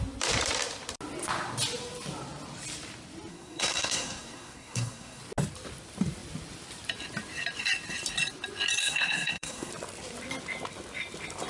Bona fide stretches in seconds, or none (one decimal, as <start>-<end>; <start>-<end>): 0.0-3.3; 5.2-8.8; 9.7-11.5